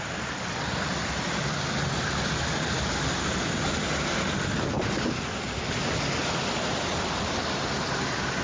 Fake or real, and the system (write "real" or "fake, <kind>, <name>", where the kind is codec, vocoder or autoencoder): real